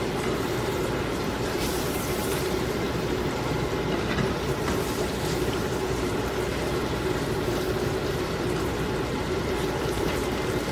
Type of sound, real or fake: fake